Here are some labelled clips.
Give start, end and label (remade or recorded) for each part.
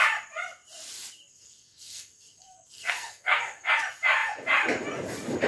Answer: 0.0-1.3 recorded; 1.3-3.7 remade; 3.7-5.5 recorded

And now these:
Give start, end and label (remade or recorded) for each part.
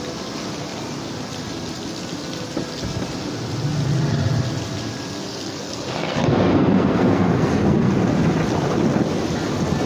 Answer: 0.0-5.3 recorded; 5.3-7.9 remade; 7.9-9.9 recorded